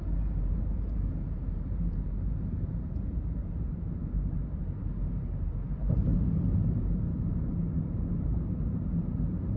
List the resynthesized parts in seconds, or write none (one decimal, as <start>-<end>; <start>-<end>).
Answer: 0.0-9.6